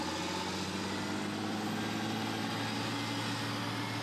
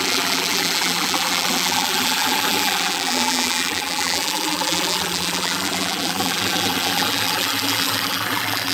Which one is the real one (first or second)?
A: first